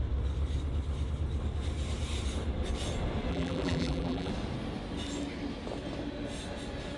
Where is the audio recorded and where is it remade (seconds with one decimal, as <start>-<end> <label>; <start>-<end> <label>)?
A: 0.0-3.3 recorded; 3.3-4.3 remade; 4.3-7.0 recorded